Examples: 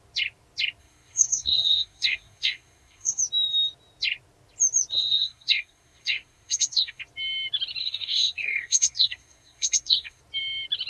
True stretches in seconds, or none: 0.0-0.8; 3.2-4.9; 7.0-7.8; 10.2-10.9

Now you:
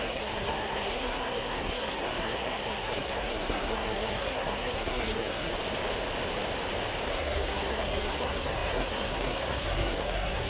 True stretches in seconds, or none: 5.5-7.1

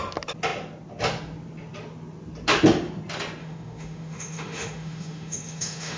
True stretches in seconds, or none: 0.0-3.4

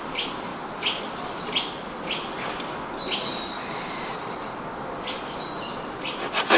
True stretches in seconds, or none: 0.0-6.6

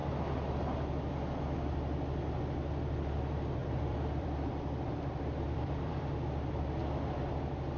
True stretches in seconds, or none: 0.0-3.6; 6.1-7.8